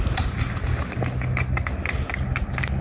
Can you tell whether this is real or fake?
real